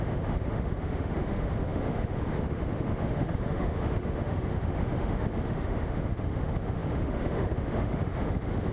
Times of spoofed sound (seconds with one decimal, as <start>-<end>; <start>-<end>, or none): 0.0-8.7

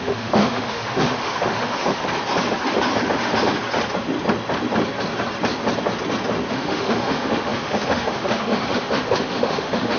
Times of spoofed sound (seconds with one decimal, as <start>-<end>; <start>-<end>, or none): 0.0-2.0; 6.5-10.0

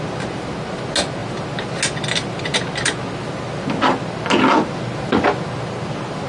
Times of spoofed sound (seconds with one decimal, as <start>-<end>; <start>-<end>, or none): none